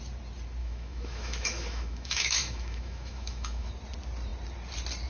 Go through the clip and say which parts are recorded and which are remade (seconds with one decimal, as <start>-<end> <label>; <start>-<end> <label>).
0.0-0.6 recorded; 0.6-3.7 remade; 3.7-5.1 recorded